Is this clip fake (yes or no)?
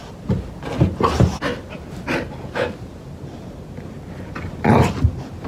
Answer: no